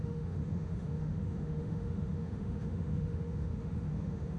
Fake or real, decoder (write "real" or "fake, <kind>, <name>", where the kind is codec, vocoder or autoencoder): fake, autoencoder, DAC-VAE